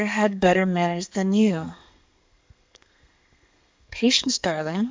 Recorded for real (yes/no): no